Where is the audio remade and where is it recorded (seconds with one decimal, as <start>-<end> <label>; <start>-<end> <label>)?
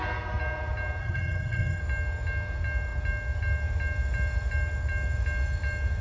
0.0-1.0 recorded; 1.0-1.8 remade; 1.8-6.0 recorded